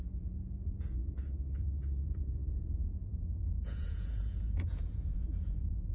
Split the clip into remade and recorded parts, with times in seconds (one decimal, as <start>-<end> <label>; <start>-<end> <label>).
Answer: 0.0-1.0 remade; 1.0-1.6 recorded; 1.6-5.9 remade